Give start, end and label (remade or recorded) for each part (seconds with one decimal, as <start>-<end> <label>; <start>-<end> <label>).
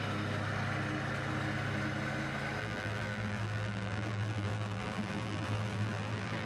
0.0-2.6 recorded; 2.6-6.5 remade